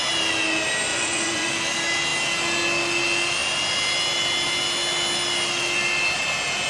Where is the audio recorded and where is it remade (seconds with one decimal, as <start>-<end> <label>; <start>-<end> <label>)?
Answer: 0.0-0.9 recorded; 0.9-1.5 remade; 1.5-6.7 recorded